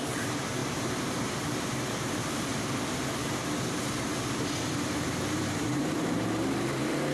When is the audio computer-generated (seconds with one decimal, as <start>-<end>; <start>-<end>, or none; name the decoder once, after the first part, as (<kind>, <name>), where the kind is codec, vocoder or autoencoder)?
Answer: 0.0-2.5 (vocoder, BigVGAN v2); 4.4-7.1